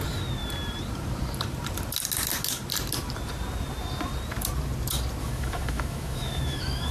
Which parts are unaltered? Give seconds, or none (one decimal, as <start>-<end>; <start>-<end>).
0.0-5.2